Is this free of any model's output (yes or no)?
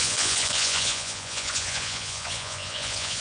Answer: no